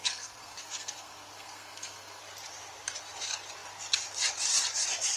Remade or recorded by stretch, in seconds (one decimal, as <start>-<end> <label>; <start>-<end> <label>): 0.0-2.2 remade; 2.2-5.2 recorded

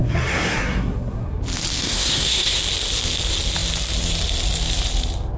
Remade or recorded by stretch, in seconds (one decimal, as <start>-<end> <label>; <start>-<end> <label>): 0.0-1.4 remade; 1.4-1.8 recorded; 1.8-2.6 remade; 2.6-5.4 recorded